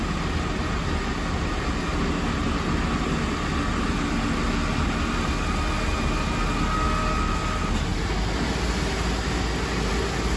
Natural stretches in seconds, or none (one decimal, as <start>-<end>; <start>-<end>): 0.0-10.4